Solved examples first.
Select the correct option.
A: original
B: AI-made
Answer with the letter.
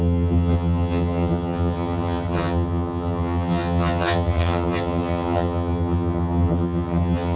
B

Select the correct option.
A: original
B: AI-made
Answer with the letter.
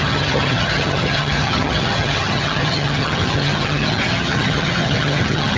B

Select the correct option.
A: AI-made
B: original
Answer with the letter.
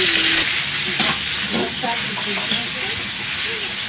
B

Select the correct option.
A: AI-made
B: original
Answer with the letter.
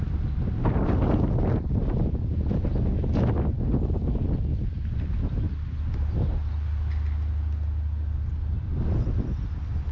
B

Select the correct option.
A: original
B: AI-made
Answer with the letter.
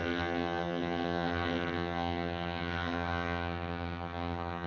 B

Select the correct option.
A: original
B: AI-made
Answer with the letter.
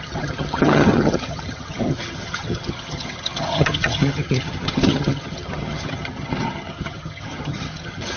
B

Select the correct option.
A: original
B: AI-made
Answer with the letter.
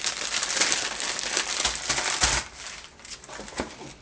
A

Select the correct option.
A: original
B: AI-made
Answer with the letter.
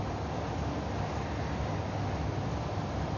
A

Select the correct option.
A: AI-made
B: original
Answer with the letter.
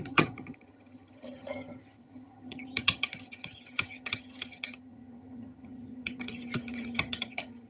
A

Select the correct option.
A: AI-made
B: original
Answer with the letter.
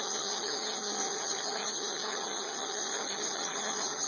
A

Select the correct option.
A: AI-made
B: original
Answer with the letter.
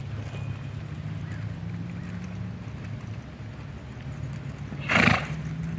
B